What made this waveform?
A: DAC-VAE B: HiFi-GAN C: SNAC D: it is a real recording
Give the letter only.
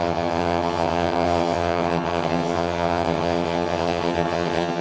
B